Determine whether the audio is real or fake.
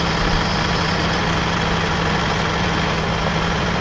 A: real